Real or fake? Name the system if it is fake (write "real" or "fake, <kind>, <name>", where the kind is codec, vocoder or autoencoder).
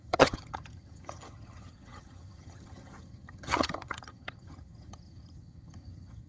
fake, vocoder, HiFi-GAN